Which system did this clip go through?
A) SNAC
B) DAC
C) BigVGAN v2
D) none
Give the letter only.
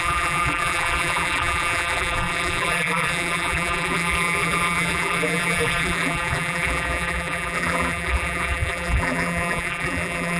C